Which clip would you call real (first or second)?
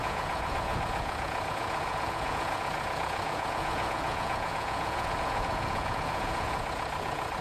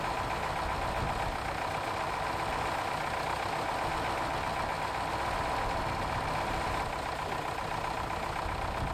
second